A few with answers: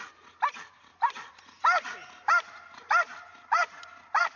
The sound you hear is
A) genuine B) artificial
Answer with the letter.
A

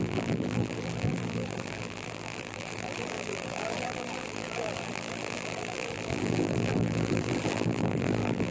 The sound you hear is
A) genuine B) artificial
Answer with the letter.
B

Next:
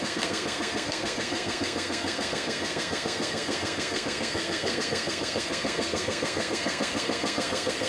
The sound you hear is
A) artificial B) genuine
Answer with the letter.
A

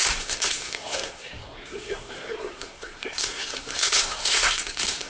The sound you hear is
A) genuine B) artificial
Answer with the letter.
B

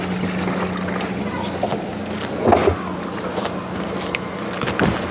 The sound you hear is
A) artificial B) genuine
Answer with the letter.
B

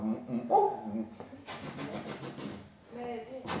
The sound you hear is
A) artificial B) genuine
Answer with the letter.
B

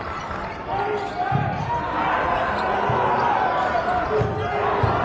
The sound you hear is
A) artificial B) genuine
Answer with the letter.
B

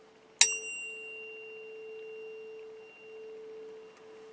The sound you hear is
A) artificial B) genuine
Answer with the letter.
B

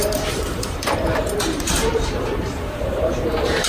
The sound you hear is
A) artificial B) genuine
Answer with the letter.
A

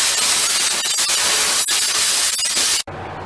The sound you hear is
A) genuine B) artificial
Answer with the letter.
A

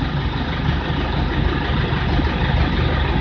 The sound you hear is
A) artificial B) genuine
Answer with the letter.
B